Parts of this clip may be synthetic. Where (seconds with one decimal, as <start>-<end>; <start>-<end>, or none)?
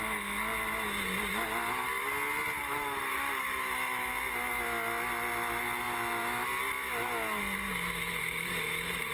2.6-4.1; 7.7-9.1